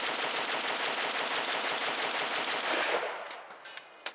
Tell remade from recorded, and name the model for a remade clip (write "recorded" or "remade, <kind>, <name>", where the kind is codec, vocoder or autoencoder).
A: recorded